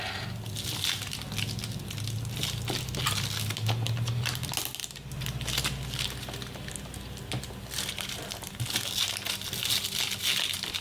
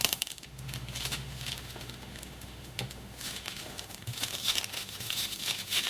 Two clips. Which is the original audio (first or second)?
first